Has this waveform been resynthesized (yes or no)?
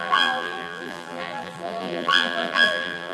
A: yes